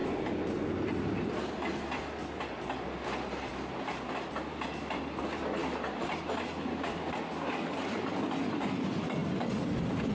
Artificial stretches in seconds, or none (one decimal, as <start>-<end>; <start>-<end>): none